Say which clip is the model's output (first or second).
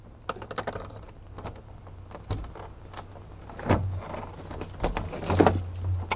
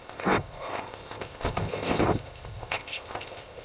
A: second